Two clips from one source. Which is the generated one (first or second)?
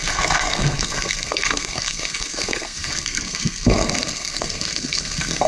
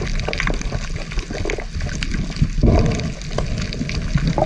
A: first